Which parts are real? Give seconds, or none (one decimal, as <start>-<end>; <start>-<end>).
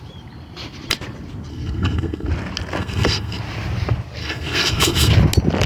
0.0-1.5; 2.3-2.8; 3.4-4.2; 5.1-5.7